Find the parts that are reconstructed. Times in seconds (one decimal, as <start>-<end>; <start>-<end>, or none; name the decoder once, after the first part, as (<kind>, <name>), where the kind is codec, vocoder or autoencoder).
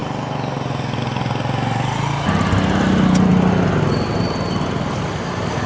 none